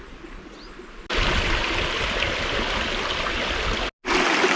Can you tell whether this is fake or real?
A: real